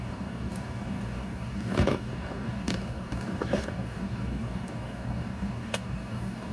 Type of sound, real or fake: fake